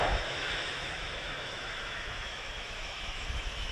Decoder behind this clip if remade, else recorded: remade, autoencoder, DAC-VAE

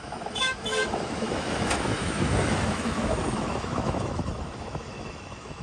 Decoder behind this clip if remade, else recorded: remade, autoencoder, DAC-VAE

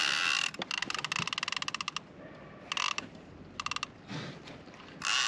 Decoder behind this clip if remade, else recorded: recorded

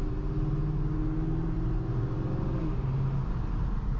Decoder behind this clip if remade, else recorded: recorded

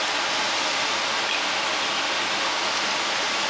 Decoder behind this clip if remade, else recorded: recorded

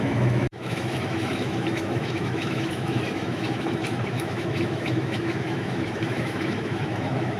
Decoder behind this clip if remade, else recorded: remade, autoencoder, DAC-VAE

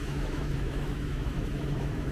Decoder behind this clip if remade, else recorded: remade, autoencoder, DAC-VAE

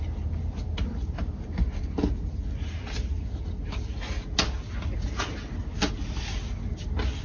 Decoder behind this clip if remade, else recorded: recorded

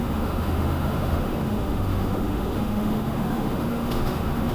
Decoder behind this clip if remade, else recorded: remade, autoencoder, DAC-VAE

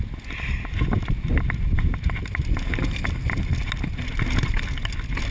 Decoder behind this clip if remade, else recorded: recorded